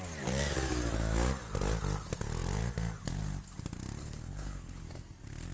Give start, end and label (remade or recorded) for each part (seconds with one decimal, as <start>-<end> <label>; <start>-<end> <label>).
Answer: 0.0-4.0 recorded; 4.0-4.8 remade; 4.8-5.5 recorded